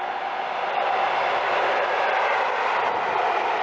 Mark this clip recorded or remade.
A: recorded